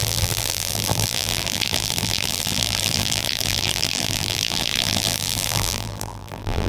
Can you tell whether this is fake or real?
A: fake